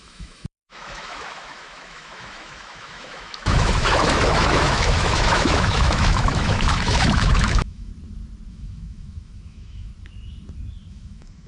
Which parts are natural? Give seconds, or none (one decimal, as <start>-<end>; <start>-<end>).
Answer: 7.9-8.5; 9.9-10.9